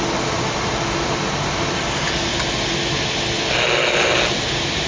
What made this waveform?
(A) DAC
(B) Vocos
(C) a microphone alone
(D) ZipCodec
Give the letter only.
C